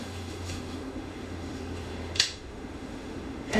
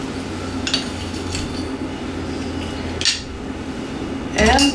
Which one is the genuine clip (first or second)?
second